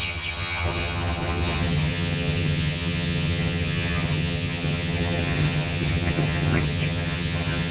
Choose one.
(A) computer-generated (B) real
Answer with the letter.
A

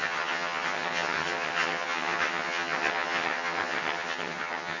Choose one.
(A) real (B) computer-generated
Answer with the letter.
B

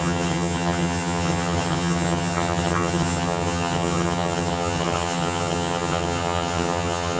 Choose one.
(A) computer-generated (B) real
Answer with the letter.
A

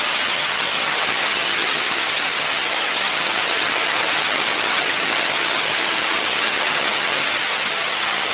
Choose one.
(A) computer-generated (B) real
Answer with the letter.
A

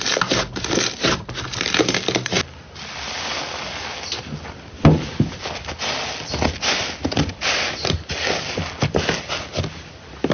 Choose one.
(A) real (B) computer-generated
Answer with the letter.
A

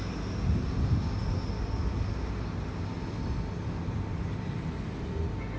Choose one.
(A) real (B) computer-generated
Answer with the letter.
A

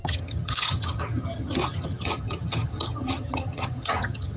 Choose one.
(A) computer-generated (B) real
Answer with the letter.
A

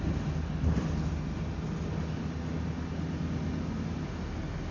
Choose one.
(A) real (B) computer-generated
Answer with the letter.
A